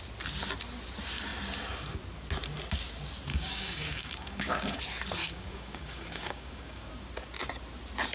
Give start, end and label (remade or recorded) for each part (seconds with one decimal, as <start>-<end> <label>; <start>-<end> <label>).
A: 0.0-3.3 recorded; 3.3-4.8 remade; 4.8-5.2 recorded; 5.2-6.9 remade; 6.9-8.1 recorded